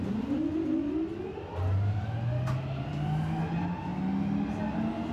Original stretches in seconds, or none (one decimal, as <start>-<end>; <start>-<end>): 0.0-5.1